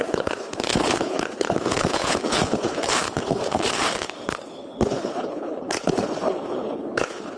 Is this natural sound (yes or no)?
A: no